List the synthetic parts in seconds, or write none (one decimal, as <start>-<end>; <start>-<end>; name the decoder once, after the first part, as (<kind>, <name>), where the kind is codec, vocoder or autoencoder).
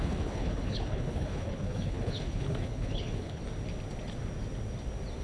0.0-3.4 (codec, HILCodec)